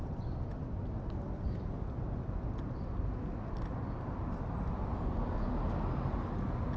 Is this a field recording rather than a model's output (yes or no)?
yes